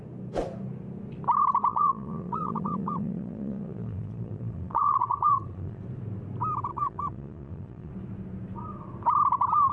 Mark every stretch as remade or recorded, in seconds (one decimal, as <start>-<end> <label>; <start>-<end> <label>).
0.0-1.7 recorded; 1.7-5.8 remade; 5.8-6.7 recorded; 6.7-7.9 remade; 7.9-9.7 recorded